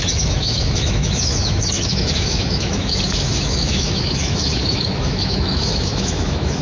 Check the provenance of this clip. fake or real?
fake